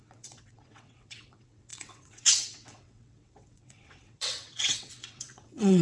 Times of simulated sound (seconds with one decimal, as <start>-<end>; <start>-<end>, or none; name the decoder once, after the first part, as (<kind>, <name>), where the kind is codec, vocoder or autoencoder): 0.0-5.8 (vocoder, WaveNeXt)

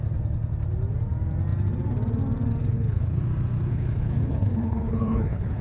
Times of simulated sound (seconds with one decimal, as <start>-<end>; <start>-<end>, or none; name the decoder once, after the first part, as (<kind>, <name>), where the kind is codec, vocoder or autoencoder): 2.6-3.2 (codec, HILCodec); 3.7-5.6